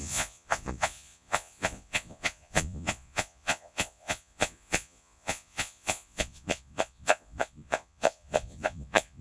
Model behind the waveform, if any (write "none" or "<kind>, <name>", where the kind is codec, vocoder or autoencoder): vocoder, Vocos